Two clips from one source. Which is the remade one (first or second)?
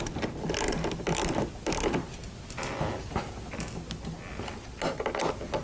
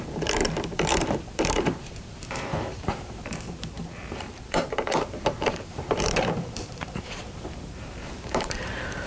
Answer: second